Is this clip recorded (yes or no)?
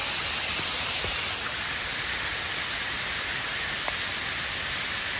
yes